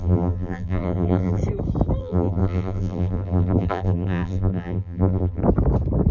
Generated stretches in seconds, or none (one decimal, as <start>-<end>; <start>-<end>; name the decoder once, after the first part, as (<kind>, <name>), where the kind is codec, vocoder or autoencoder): 0.0-1.4 (vocoder, BigVGAN v2); 2.0-5.4